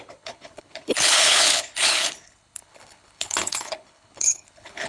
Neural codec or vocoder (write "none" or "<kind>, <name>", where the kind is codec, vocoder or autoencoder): codec, HILCodec